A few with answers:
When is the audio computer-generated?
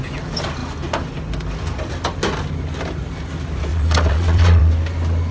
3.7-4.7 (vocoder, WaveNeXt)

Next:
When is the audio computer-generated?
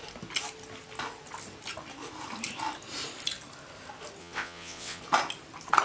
4.2-5.0 (vocoder, WaveNeXt)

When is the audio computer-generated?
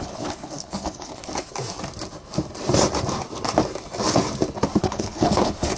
0.0-1.3 (codec, HILCodec); 4.8-5.8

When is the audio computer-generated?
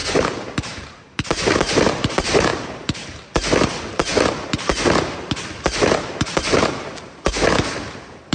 none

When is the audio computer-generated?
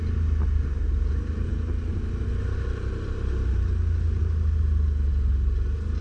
none